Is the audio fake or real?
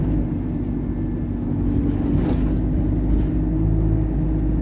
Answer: real